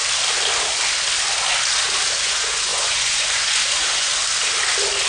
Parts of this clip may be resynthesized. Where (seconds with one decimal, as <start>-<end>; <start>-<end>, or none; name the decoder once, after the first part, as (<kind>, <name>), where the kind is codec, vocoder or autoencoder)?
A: 2.2-4.1 (vocoder, Vocos)

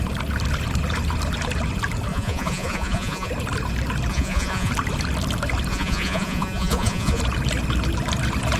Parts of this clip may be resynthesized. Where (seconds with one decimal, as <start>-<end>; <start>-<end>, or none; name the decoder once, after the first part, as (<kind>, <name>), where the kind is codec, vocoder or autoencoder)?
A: 2.1-3.3 (vocoder, Vocos); 4.1-4.7; 5.7-7.2

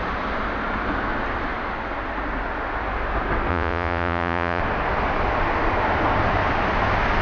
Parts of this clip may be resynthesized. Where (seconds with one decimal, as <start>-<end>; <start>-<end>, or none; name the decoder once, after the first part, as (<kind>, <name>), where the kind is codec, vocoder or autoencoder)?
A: 3.5-4.6 (vocoder, Vocos)

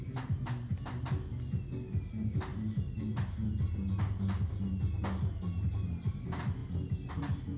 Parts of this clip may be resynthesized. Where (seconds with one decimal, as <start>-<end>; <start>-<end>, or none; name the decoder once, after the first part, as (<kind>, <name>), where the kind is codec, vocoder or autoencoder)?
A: none